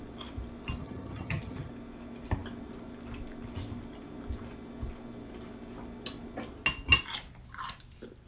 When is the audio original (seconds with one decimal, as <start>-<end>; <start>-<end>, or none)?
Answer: 0.0-0.8; 1.7-8.3